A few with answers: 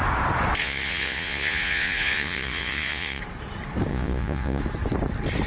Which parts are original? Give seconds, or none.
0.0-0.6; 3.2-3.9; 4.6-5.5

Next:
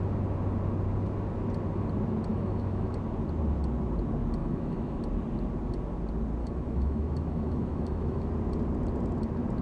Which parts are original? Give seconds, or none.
0.0-2.3; 2.9-4.4; 5.0-6.4; 8.3-9.6

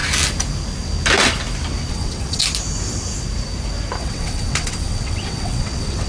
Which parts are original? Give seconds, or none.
0.0-1.9; 2.4-4.0

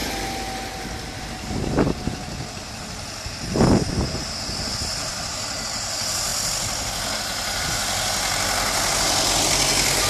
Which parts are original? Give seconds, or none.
0.0-10.1

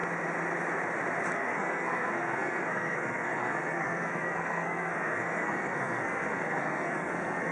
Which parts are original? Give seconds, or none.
0.0-1.3